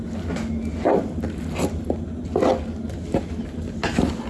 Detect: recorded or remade recorded